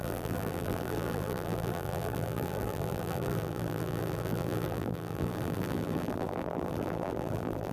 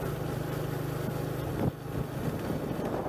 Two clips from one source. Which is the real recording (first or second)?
second